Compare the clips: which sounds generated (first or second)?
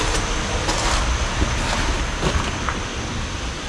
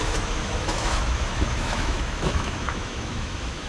second